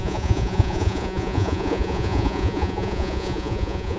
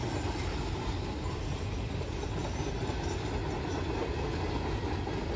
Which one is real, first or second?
second